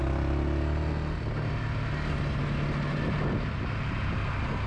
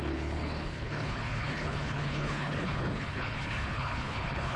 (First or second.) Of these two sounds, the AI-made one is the second